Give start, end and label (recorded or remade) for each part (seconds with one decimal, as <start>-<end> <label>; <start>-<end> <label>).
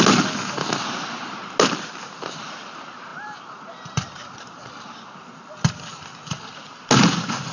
0.0-7.5 recorded